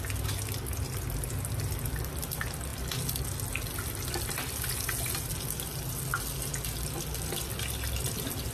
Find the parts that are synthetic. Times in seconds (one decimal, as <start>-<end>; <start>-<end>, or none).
none